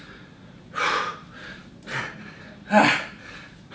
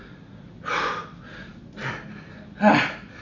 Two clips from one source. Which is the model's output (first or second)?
first